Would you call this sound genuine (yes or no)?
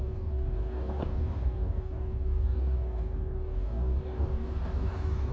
no